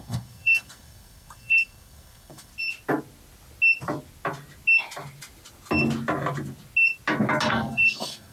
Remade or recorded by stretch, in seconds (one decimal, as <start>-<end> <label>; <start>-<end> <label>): 0.0-2.5 remade; 2.5-7.5 recorded; 7.5-8.3 remade